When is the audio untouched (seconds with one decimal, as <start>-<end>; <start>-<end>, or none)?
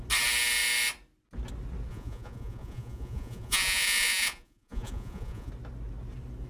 0.0-1.9; 5.5-6.5